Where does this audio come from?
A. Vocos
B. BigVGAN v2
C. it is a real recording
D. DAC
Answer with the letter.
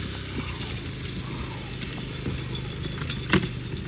C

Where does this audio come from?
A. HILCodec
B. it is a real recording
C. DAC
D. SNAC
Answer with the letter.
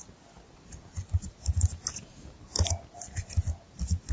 B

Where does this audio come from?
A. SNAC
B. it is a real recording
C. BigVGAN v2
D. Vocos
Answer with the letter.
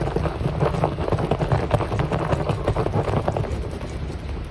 B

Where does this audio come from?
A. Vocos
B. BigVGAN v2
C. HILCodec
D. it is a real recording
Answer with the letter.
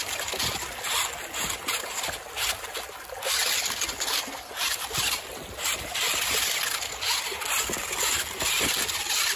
D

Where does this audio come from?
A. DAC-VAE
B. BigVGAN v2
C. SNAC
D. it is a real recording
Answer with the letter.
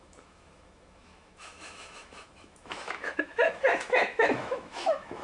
A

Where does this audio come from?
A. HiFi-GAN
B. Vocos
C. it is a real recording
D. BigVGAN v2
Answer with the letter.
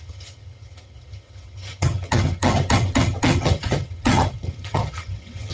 A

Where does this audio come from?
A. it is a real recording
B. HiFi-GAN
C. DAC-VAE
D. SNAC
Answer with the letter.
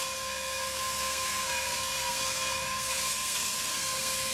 D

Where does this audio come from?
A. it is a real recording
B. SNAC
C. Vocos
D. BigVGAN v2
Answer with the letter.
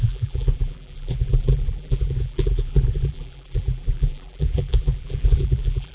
D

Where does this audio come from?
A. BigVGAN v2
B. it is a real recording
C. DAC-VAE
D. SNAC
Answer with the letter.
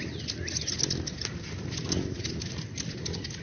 B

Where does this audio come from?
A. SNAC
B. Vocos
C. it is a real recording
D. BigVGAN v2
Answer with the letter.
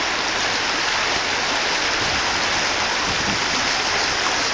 C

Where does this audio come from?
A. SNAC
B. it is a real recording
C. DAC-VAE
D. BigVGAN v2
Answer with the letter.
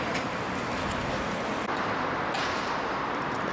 B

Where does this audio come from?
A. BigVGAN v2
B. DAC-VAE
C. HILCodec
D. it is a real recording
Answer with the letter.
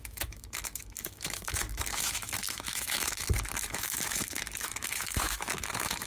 B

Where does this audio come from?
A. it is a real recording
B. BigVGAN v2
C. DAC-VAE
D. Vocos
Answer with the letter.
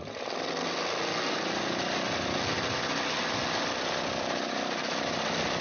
A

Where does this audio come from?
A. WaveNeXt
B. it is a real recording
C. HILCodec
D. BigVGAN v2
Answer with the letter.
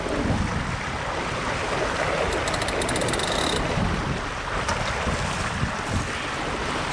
B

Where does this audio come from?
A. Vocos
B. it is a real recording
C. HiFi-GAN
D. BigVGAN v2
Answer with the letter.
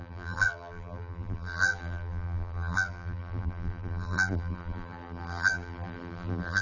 D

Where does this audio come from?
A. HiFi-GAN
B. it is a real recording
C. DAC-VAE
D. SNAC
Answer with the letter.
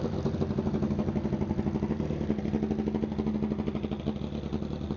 B